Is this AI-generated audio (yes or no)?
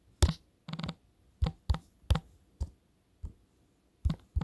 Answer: no